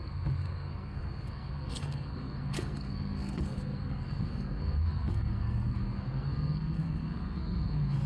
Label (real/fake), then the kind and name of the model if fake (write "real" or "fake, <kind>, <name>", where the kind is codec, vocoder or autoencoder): fake, codec, SNAC